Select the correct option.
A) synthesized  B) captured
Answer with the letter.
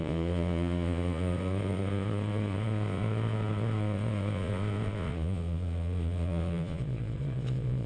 A